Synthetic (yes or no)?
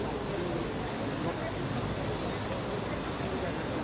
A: no